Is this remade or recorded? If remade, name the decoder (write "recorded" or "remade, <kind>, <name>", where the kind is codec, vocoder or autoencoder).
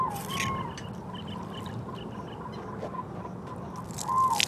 recorded